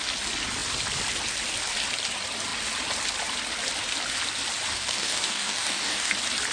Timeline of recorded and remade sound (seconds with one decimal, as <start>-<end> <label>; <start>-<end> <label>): 0.0-4.7 recorded; 4.7-6.1 remade; 6.1-6.5 recorded